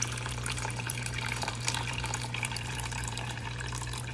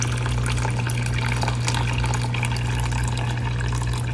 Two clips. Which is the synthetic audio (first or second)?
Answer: first